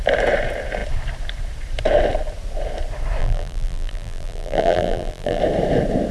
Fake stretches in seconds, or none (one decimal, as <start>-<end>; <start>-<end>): 3.2-5.4